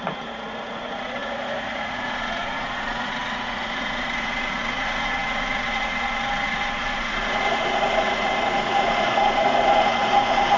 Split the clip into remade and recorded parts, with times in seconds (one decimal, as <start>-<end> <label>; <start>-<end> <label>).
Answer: 0.0-10.6 remade